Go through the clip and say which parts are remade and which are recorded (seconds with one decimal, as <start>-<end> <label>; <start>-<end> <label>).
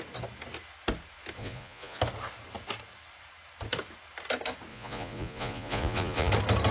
0.0-1.4 recorded; 1.4-2.0 remade; 2.0-4.7 recorded; 4.7-6.3 remade; 6.3-6.7 recorded